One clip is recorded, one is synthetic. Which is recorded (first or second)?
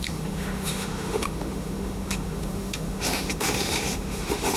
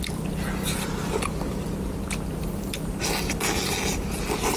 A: second